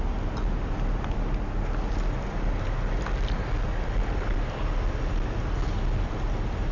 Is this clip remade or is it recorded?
recorded